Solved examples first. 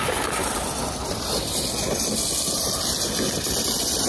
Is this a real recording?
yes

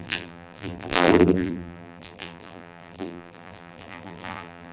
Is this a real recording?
no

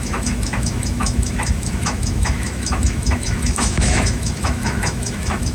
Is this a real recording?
no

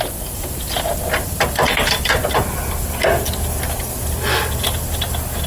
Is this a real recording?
yes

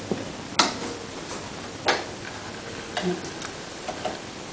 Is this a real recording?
yes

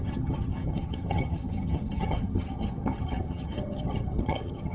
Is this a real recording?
no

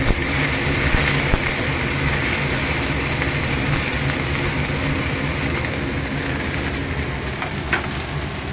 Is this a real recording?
yes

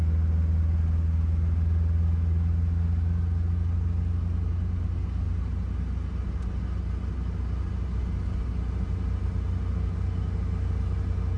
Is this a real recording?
yes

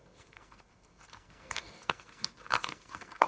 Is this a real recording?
no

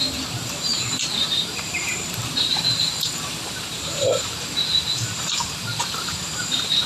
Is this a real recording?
no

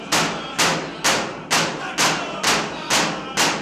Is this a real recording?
yes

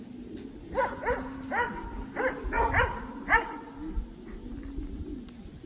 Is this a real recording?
yes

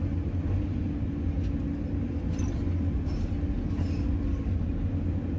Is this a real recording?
yes